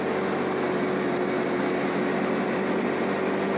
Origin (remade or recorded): recorded